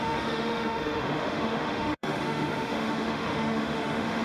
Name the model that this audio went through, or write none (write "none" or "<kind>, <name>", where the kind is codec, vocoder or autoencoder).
autoencoder, DAC-VAE